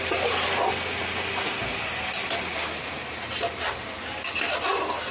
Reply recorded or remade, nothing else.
recorded